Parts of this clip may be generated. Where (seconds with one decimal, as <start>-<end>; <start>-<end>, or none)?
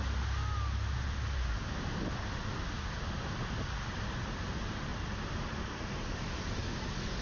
4.3-4.9; 5.5-6.6